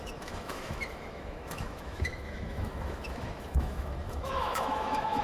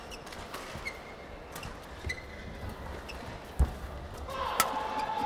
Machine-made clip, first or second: first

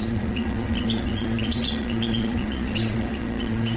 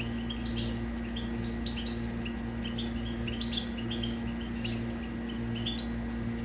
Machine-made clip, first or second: first